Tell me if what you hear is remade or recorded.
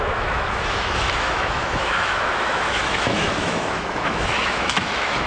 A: remade